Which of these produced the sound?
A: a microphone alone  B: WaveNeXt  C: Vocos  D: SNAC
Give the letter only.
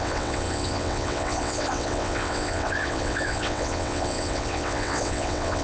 B